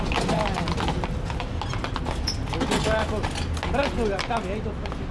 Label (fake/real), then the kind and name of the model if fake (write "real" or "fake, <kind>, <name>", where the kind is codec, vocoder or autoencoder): real